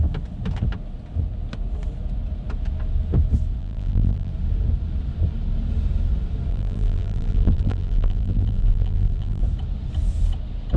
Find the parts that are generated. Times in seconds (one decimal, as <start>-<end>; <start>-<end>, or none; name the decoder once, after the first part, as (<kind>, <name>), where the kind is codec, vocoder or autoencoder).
3.6-4.3 (vocoder, BigVGAN v2); 6.5-9.4